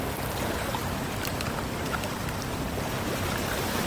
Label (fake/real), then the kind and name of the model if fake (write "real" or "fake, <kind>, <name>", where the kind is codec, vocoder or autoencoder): real